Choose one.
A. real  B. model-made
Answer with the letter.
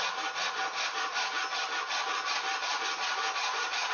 A